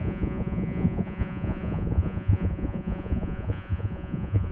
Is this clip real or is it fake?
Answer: fake